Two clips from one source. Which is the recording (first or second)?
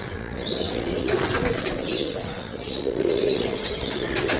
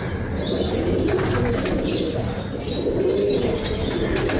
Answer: second